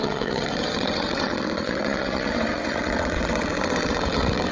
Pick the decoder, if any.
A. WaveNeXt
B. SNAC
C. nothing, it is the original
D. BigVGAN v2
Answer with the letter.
A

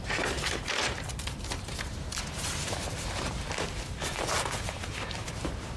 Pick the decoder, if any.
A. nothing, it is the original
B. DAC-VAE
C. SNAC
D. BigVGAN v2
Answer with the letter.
D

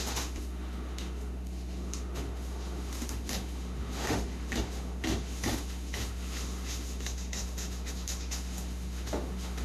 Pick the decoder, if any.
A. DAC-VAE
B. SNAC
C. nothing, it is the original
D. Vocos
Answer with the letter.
A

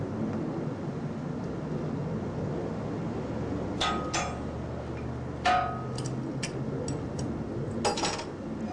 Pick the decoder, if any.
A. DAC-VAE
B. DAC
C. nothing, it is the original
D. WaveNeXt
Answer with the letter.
C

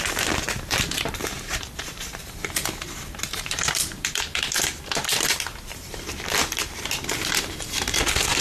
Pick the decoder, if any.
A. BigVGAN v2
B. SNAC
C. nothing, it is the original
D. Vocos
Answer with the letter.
A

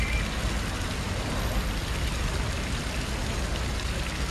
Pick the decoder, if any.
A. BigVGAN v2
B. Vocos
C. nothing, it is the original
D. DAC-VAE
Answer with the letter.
C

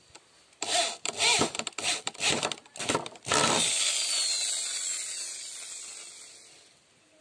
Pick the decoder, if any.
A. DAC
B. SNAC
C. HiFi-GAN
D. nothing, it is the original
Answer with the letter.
D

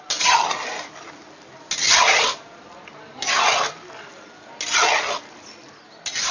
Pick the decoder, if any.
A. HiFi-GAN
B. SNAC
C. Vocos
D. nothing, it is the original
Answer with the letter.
D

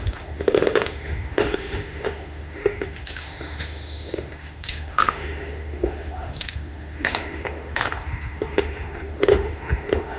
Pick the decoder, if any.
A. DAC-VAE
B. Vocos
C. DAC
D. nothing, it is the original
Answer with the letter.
A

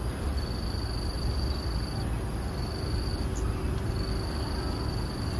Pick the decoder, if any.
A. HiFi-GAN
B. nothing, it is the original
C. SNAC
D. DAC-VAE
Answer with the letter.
B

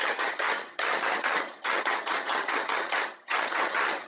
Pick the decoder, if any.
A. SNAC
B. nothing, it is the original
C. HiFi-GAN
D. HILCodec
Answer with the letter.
C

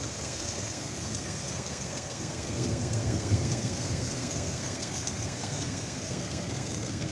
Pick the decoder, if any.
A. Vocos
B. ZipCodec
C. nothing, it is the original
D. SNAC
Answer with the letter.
D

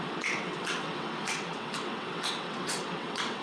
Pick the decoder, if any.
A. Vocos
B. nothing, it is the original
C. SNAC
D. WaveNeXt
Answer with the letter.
D